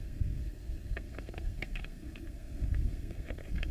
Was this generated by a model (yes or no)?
yes